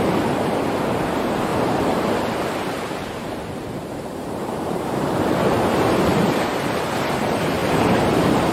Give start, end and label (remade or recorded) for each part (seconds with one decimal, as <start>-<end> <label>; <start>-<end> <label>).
0.0-1.5 recorded; 1.5-6.6 remade; 6.6-7.6 recorded; 7.6-8.5 remade